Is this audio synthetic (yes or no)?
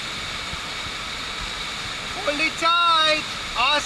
no